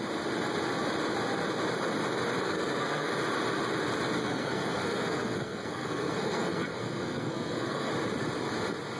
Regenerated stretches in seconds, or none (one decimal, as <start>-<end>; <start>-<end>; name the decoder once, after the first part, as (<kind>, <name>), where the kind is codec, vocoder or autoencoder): 2.4-3.1 (codec, SNAC); 4.2-7.9